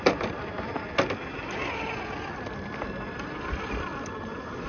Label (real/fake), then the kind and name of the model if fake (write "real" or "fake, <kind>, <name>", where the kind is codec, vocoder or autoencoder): real